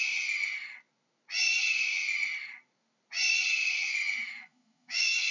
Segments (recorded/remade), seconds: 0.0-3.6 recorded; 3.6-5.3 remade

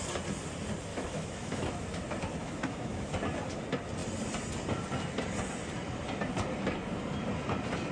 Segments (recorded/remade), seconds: 0.0-0.9 recorded; 0.9-1.7 remade; 1.7-2.4 recorded; 2.4-3.1 remade; 3.1-7.9 recorded

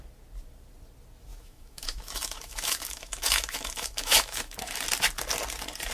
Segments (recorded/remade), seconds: 0.0-1.3 recorded; 1.3-4.8 remade; 4.8-5.9 recorded

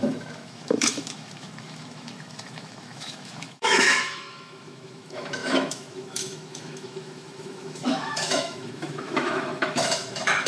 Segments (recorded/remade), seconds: 0.0-10.5 remade

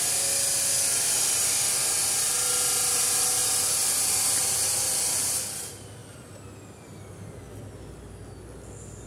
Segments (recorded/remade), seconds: 0.0-9.1 recorded